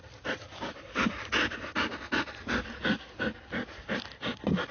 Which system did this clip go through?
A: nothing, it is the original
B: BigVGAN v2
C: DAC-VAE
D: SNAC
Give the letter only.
A